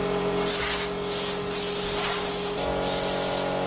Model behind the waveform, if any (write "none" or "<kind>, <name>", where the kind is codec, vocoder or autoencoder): none